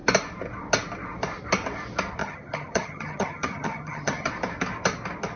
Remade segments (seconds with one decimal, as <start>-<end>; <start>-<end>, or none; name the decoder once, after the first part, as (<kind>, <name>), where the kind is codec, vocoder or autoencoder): 2.2-4.3 (vocoder, HiFi-GAN)